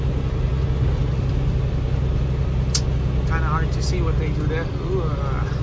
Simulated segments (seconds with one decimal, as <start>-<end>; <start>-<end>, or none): none